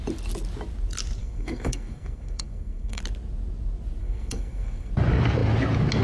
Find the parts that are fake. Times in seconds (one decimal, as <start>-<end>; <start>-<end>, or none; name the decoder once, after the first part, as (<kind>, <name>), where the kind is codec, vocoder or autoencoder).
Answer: 1.2-3.0 (codec, SNAC); 4.0-4.9